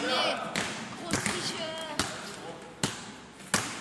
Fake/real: real